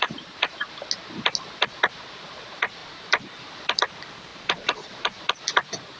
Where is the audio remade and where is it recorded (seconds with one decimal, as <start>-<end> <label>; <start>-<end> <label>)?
0.0-2.8 recorded; 2.8-3.5 remade; 3.5-4.3 recorded; 4.3-5.2 remade; 5.2-6.0 recorded